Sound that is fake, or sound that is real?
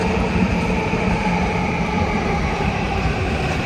fake